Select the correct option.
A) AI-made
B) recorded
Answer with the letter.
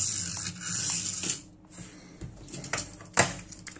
B